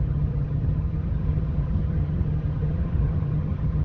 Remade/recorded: remade